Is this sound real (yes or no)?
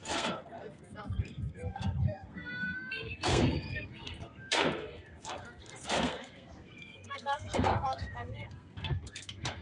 no